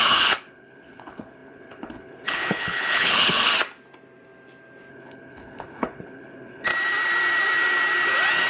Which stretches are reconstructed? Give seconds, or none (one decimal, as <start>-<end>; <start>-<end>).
0.0-3.5; 4.9-6.7